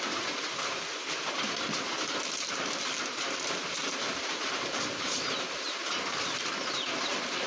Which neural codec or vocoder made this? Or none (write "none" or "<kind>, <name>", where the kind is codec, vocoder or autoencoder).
vocoder, BigVGAN v2